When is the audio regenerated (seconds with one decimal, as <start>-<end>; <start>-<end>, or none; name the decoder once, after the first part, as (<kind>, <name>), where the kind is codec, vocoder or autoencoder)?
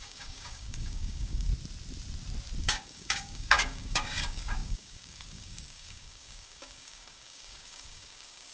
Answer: 0.0-1.5 (codec, DAC); 2.6-8.5